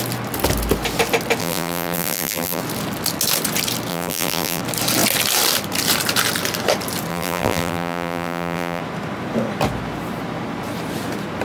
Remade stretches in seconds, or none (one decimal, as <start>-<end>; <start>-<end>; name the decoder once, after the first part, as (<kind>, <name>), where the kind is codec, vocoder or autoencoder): 1.4-2.6 (vocoder, BigVGAN v2); 3.9-4.6; 7.1-8.8

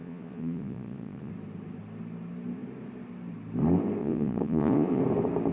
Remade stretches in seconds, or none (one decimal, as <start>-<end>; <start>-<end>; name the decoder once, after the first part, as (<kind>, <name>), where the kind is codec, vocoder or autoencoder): 0.0-1.3 (vocoder, Vocos); 4.0-5.0

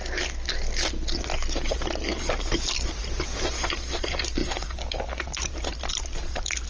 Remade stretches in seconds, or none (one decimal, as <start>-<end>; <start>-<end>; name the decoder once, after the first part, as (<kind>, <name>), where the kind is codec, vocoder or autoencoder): 2.2-6.7 (vocoder, BigVGAN v2)

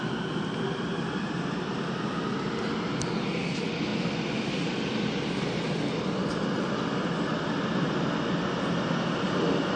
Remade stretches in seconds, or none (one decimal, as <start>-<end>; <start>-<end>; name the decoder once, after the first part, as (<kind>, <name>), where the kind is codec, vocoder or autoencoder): none

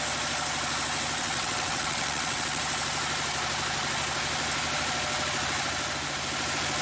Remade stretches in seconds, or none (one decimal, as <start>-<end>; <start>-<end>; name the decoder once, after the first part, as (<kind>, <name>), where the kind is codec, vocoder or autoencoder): 1.2-2.6 (vocoder, WaveNeXt)

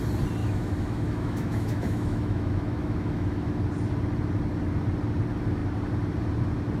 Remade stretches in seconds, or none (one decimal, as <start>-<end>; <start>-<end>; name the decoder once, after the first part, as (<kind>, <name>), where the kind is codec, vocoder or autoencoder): 0.4-3.5 (autoencoder, DAC-VAE)

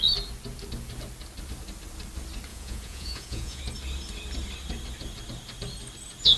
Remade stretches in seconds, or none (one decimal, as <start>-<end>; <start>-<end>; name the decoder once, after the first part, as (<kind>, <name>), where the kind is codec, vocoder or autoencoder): 2.5-3.6 (vocoder, Vocos)

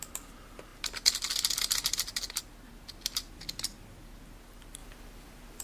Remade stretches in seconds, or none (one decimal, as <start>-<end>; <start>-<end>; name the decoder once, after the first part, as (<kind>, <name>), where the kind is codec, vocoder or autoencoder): 4.8-5.6 (vocoder, BigVGAN v2)